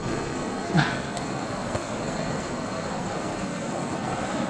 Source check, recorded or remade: remade